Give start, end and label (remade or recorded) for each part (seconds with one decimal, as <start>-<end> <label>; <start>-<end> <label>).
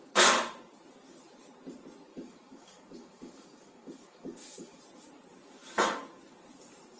0.0-2.1 recorded; 2.1-4.8 remade; 4.8-7.0 recorded